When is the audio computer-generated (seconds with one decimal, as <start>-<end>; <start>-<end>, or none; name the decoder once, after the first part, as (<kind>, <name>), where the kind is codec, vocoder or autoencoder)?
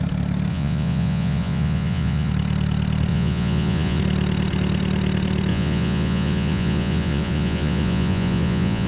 0.5-2.3 (vocoder, Vocos); 3.1-4.0; 5.5-8.9